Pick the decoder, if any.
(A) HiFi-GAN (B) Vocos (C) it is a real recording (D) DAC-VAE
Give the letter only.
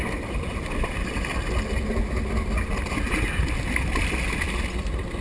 C